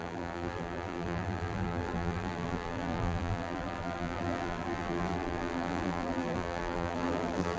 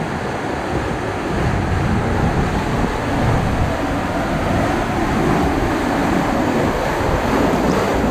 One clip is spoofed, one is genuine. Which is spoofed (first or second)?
first